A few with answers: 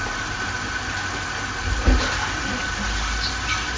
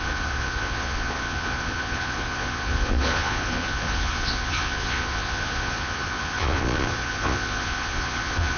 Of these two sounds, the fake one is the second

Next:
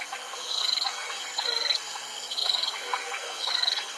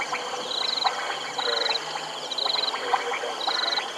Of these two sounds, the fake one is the first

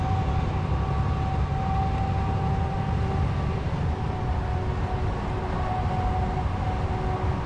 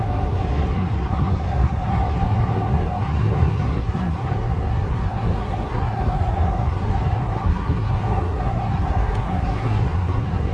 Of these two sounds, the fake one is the second